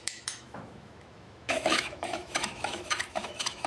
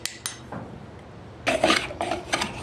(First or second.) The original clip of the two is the second